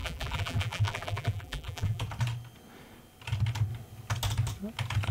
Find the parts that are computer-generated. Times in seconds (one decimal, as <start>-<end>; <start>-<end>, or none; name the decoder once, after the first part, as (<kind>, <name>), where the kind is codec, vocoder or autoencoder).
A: 0.0-2.0 (vocoder, BigVGAN v2)